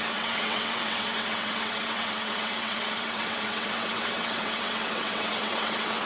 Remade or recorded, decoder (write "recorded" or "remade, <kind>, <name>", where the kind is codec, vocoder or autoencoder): remade, vocoder, WaveNeXt